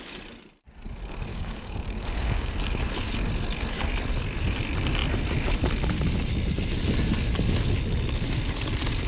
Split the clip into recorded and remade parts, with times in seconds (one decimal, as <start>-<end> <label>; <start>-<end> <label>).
0.0-1.3 recorded; 1.3-2.5 remade; 2.5-9.1 recorded